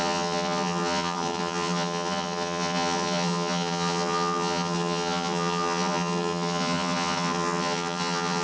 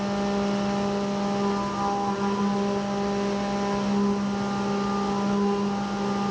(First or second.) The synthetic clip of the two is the first